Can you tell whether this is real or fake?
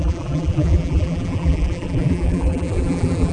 fake